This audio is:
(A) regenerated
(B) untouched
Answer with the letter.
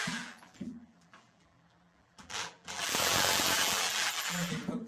A